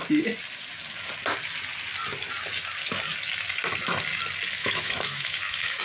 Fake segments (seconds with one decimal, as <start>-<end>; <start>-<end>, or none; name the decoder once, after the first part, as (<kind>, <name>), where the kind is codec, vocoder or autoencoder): 4.6-5.8 (autoencoder, DAC-VAE)